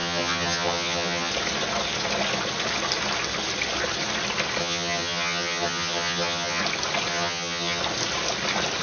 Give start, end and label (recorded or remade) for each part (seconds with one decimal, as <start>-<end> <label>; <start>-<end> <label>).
0.0-1.3 remade; 1.3-4.6 recorded; 4.6-6.6 remade; 6.6-7.1 recorded; 7.1-7.8 remade; 7.8-8.8 recorded